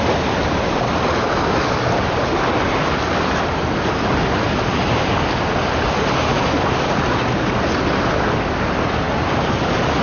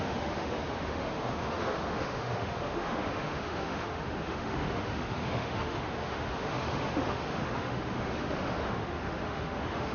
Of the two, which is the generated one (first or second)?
second